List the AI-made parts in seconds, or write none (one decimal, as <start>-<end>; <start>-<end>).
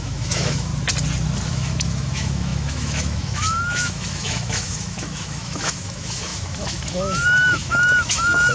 0.0-0.7; 1.5-8.5